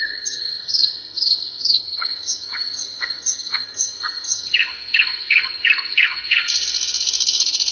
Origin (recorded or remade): remade